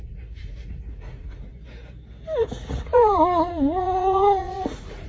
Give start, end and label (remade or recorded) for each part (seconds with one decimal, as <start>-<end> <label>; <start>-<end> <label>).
0.0-1.5 remade; 1.5-2.4 recorded; 2.4-5.1 remade